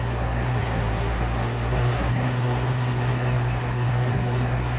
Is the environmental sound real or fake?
fake